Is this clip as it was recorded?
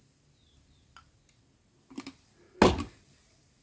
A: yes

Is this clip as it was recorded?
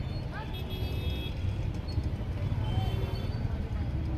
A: yes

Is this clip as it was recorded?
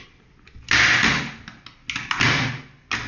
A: yes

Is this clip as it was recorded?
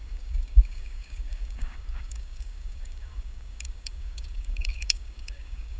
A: no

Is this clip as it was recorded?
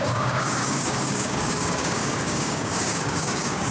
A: no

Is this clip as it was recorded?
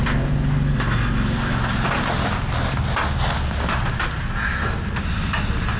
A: yes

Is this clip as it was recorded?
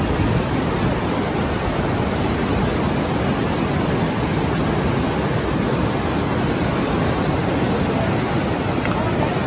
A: yes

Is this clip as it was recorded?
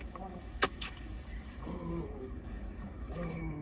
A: no